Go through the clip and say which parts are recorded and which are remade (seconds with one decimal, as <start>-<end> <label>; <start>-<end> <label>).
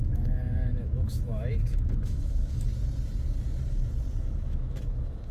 0.0-2.7 remade; 2.7-4.2 recorded; 4.2-5.3 remade